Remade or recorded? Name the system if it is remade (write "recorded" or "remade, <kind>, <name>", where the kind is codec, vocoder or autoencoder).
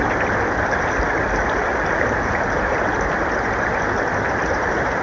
recorded